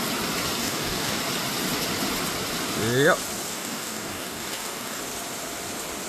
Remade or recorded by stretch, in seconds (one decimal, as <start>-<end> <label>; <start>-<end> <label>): 0.0-0.6 recorded; 0.6-1.2 remade; 1.2-3.5 recorded; 3.5-5.0 remade; 5.0-6.1 recorded